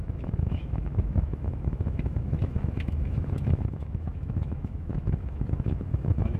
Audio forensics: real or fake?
fake